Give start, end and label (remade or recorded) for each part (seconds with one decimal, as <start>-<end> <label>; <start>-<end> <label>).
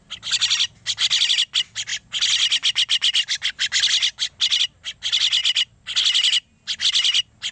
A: 0.0-7.5 recorded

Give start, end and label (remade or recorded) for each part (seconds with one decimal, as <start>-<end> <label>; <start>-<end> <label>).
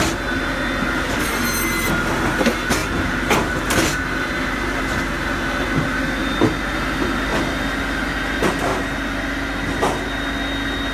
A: 0.0-2.8 recorded; 2.8-4.8 remade; 4.8-10.9 recorded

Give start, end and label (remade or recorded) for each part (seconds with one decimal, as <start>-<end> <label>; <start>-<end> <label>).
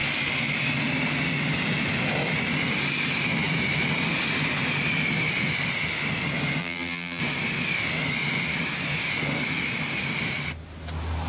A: 0.0-6.6 recorded; 6.6-7.2 remade; 7.2-11.3 recorded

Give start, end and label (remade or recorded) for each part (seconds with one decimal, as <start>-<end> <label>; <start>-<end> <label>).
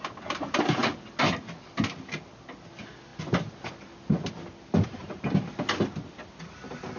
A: 0.0-7.0 recorded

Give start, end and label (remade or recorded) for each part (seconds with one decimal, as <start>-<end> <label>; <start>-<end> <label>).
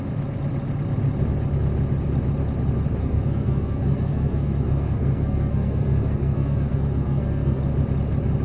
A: 0.0-3.0 recorded; 3.0-7.6 remade; 7.6-8.4 recorded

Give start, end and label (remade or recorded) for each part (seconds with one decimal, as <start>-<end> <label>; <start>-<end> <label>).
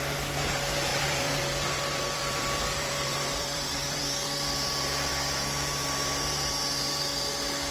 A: 0.0-0.9 recorded; 0.9-4.0 remade; 4.0-7.7 recorded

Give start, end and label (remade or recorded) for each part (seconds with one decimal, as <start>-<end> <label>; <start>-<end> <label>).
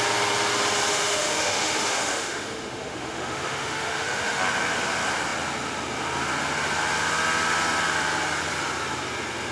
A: 0.0-0.9 recorded; 0.9-4.4 remade; 4.4-9.5 recorded